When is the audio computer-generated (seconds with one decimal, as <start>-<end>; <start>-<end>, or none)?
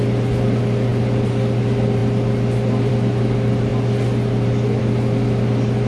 none